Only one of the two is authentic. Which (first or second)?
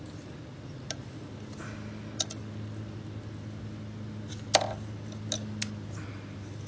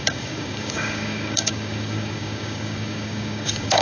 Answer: first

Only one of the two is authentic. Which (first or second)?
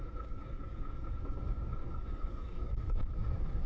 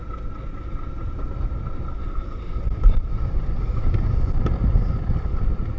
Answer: second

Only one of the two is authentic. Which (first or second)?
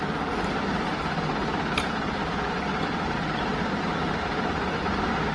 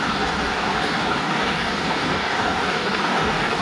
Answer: first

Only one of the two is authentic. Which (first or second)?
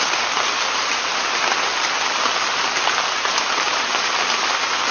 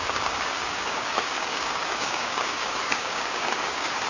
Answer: first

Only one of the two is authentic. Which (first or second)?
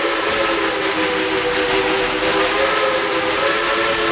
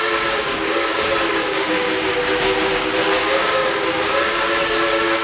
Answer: first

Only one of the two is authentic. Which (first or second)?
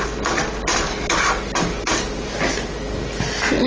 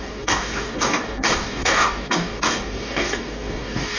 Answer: first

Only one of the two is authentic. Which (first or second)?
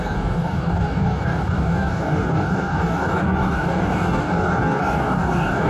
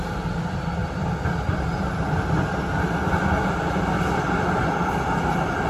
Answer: second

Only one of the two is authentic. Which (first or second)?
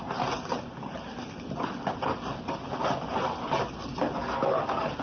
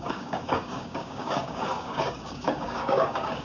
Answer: first